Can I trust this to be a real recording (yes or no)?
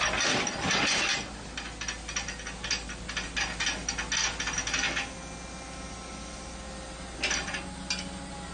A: yes